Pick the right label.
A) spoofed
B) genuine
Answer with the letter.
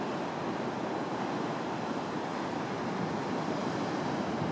B